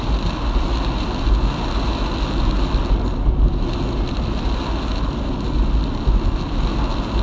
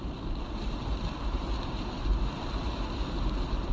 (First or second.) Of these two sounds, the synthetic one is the second